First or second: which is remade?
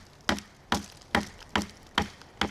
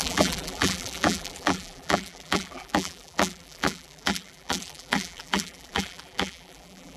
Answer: second